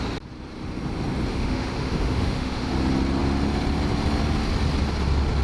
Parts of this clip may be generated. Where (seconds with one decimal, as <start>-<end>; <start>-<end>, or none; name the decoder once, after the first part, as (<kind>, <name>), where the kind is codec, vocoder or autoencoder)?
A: 1.3-2.7 (autoencoder, DAC-VAE)